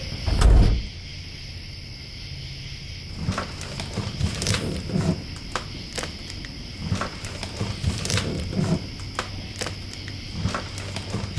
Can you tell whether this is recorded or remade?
recorded